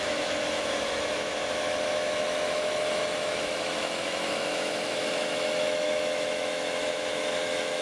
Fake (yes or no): yes